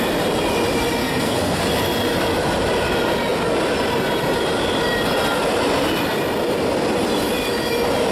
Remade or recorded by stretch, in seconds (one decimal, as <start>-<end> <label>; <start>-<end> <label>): 0.0-1.0 recorded; 1.0-1.6 remade; 1.6-8.1 recorded